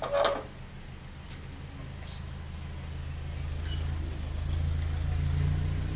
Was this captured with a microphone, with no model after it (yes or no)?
yes